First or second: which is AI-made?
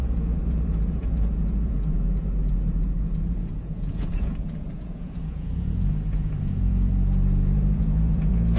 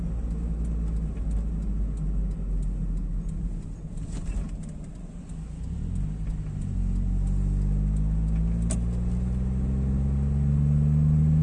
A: first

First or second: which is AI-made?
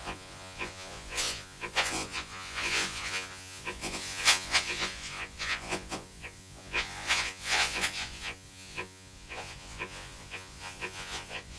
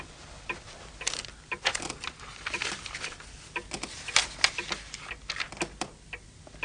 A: first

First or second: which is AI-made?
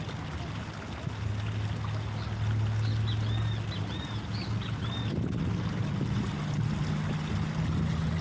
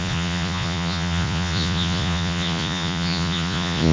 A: second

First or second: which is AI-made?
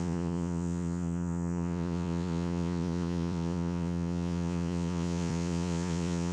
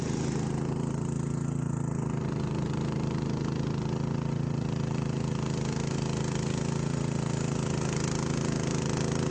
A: first